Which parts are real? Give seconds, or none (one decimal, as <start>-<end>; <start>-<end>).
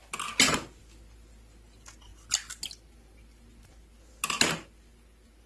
0.0-5.5